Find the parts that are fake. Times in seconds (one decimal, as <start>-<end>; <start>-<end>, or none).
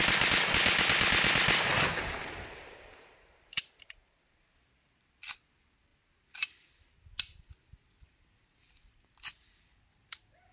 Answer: 1.9-4.3